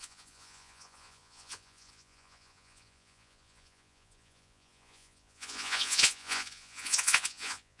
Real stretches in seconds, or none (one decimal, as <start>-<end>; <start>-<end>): none